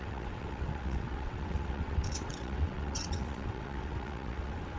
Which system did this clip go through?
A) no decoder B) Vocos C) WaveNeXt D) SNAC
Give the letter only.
C